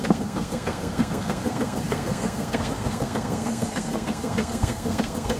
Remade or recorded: remade